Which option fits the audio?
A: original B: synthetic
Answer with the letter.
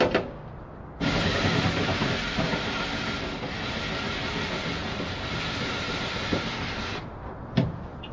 A